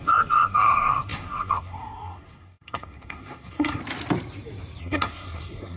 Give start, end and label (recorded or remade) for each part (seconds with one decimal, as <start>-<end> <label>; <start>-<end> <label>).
0.0-3.8 remade; 3.8-4.8 recorded; 4.8-5.8 remade